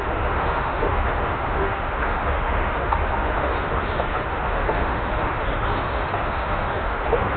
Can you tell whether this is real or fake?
fake